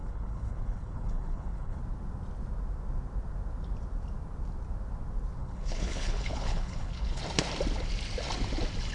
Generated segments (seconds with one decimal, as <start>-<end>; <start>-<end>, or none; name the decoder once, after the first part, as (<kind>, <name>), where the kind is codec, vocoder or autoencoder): 0.0-1.8 (codec, HILCodec); 5.4-7.2